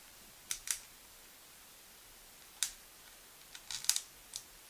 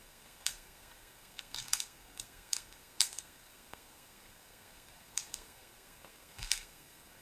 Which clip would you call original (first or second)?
first